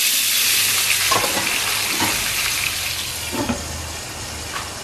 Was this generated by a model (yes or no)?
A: no